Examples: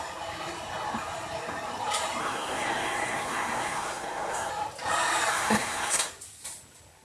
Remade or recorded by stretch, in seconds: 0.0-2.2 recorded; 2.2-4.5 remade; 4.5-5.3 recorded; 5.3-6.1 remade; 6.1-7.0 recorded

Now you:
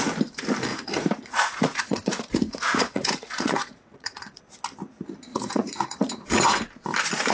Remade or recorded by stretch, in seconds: 0.0-0.7 recorded; 0.7-4.4 remade; 4.4-5.3 recorded; 5.3-6.6 remade; 6.6-7.3 recorded

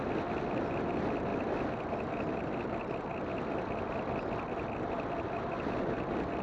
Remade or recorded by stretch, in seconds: 0.0-6.4 recorded